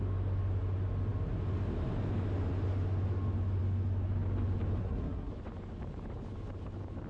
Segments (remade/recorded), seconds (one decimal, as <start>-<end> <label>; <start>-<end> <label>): 0.0-4.8 recorded; 4.8-5.3 remade; 5.3-7.1 recorded